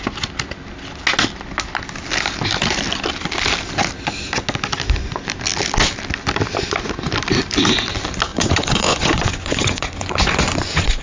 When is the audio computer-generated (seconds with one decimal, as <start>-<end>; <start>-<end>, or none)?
8.3-11.0